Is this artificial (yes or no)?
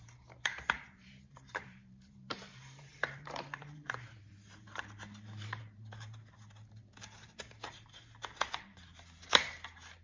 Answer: yes